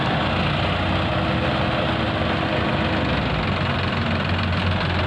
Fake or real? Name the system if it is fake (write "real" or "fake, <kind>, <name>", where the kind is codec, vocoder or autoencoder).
real